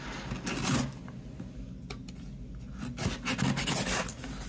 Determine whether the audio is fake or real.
real